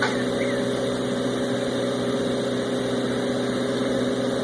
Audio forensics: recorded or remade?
recorded